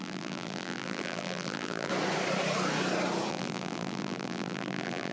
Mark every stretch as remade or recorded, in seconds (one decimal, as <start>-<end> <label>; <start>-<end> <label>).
0.0-1.9 remade; 1.9-3.3 recorded; 3.3-5.1 remade